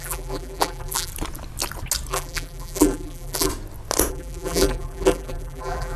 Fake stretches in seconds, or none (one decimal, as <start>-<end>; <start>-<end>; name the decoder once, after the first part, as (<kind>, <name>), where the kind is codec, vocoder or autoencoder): 0.0-1.1 (vocoder, BigVGAN v2); 2.1-3.5; 4.1-6.0